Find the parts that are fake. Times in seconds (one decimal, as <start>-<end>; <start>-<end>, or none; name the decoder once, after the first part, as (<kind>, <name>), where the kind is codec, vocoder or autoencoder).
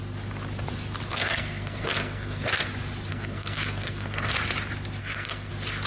1.1-2.7 (codec, SNAC); 3.1-4.3; 5.0-5.5